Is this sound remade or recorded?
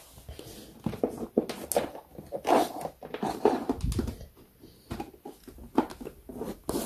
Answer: recorded